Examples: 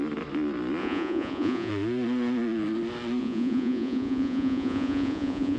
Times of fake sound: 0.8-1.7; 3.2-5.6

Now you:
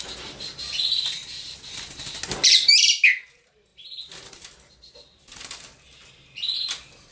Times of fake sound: none